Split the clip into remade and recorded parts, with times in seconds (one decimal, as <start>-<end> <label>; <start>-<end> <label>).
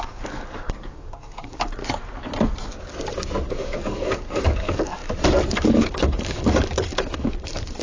0.0-1.8 remade; 1.8-3.5 recorded; 3.5-5.0 remade; 5.0-5.8 recorded; 5.8-7.8 remade